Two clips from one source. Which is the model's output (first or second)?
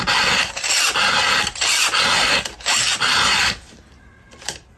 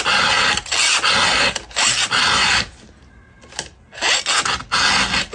first